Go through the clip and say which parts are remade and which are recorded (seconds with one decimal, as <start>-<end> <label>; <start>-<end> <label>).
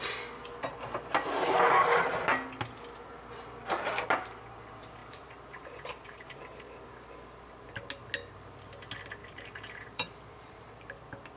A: 0.0-5.0 recorded; 5.0-6.9 remade; 6.9-9.2 recorded; 9.2-10.7 remade; 10.7-11.4 recorded